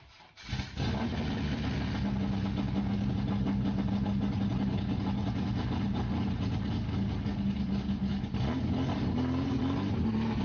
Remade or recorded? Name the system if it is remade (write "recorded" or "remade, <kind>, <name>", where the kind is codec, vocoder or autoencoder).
recorded